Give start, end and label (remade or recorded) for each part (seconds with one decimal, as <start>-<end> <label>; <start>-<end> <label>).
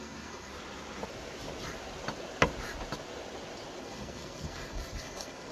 0.0-0.5 remade; 0.5-3.8 recorded; 3.8-5.5 remade